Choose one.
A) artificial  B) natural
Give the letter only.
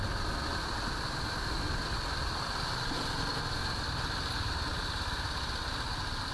B